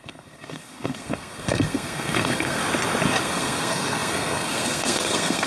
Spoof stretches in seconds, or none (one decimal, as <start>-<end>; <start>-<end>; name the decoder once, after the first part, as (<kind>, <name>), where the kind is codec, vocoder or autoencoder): 0.0-2.6 (codec, SNAC); 3.2-5.5